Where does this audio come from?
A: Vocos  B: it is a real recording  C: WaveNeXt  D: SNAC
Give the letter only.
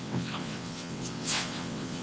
C